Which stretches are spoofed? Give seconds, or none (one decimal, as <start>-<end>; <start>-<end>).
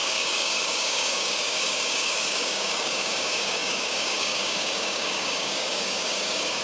0.0-6.6